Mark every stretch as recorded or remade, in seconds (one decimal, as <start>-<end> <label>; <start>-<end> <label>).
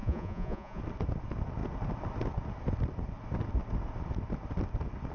0.0-0.8 remade; 0.8-5.1 recorded